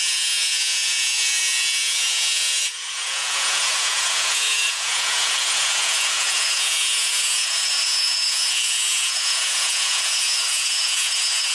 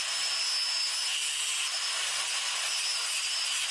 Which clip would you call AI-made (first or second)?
first